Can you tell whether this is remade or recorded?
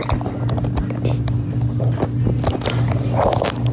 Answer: recorded